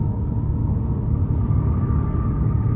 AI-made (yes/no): yes